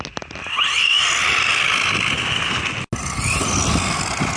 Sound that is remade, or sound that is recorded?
recorded